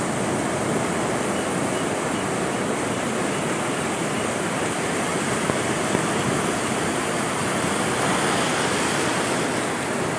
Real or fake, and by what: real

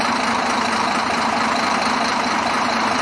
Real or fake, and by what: fake, vocoder, BigVGAN v2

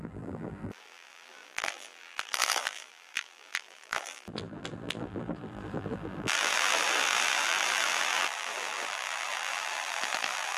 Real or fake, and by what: fake, vocoder, BigVGAN v2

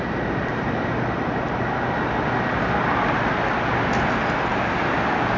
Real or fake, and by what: real